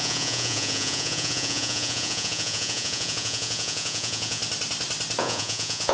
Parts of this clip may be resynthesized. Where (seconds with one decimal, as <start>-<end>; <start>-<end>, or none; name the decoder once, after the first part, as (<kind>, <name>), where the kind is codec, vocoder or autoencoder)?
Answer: 0.0-4.4 (vocoder, Vocos); 5.2-5.9